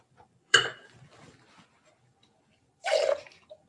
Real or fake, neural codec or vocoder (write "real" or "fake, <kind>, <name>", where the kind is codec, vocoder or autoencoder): fake, vocoder, BigVGAN v2